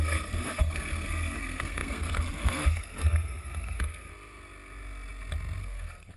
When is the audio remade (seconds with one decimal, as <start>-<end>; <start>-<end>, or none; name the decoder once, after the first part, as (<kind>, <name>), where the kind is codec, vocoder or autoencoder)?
0.0-4.1 (codec, SNAC); 5.6-6.2